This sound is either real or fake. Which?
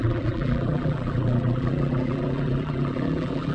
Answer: fake